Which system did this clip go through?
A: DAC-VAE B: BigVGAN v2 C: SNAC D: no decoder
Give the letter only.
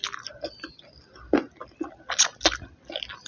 D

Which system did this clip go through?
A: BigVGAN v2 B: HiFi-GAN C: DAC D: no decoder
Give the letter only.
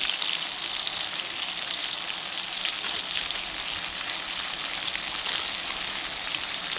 D